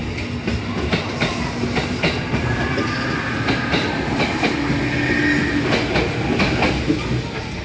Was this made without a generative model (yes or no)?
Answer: yes